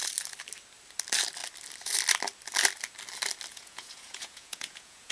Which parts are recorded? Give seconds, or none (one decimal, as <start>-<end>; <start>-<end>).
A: 0.0-3.5